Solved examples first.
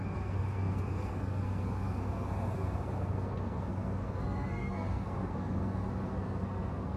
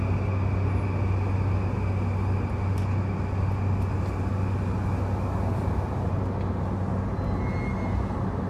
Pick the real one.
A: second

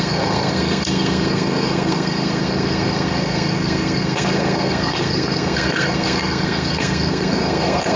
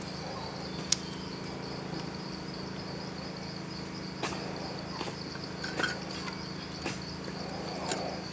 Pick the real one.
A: second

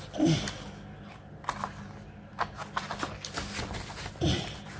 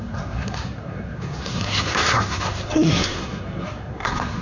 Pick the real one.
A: first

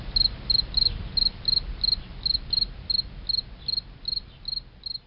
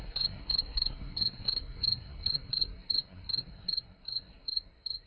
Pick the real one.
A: first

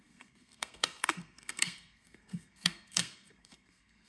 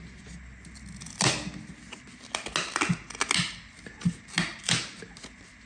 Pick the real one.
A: second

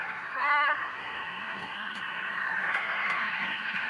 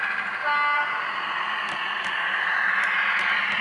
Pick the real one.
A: second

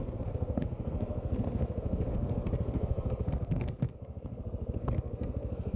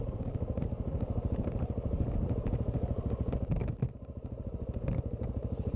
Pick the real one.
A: second